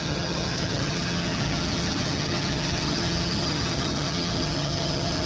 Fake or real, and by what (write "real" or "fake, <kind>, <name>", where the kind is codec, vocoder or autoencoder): fake, vocoder, HiFi-GAN